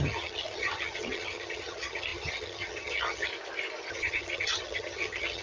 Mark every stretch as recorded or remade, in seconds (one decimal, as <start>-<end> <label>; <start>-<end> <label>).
0.0-3.3 remade; 3.3-3.9 recorded; 3.9-5.4 remade